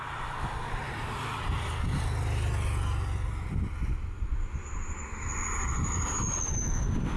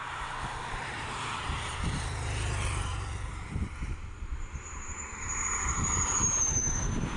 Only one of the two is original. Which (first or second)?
first